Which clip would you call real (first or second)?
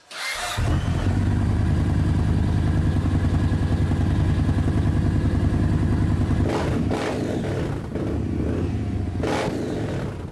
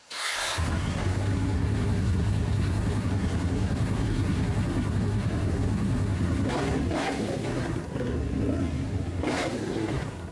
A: first